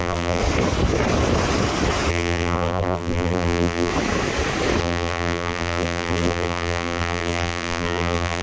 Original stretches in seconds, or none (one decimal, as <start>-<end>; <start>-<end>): 0.4-2.1; 3.9-4.8